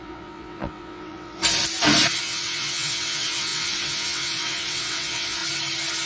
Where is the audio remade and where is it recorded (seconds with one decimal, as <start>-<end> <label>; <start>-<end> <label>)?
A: 0.0-1.4 remade; 1.4-2.2 recorded; 2.2-5.4 remade; 5.4-6.1 recorded